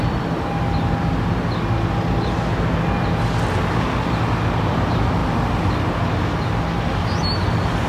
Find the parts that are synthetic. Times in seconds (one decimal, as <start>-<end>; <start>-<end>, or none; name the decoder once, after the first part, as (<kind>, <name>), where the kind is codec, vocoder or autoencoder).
none